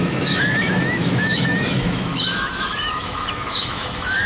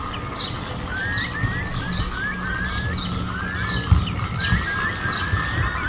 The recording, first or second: second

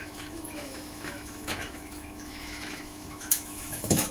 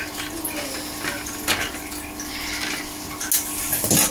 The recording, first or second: second